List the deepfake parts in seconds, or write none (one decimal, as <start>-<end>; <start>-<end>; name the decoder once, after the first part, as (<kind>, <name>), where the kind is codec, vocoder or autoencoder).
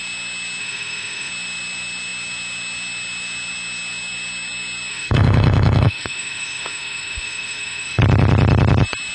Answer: 0.6-1.3 (autoencoder, DAC-VAE); 4.9-8.0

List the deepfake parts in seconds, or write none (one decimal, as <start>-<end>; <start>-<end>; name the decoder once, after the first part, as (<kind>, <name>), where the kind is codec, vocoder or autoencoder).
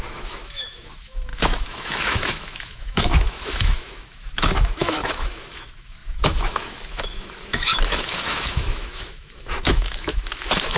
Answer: 0.0-10.8 (autoencoder, DAC-VAE)